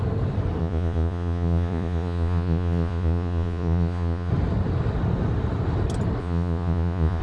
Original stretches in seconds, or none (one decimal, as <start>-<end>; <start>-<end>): 0.0-0.6; 4.3-6.2